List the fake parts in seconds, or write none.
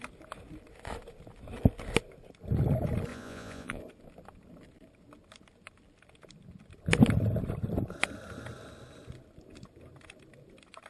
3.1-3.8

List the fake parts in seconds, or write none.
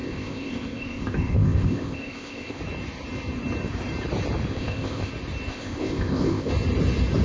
0.0-2.6; 4.5-5.1; 5.5-6.5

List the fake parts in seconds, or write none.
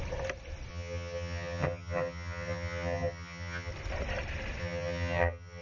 0.7-3.7; 4.6-5.6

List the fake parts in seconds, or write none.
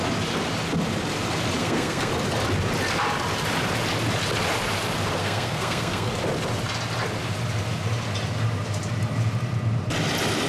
1.6-2.1; 5.2-6.1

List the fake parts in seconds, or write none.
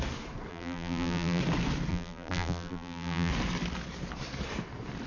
0.5-1.4; 1.9-3.3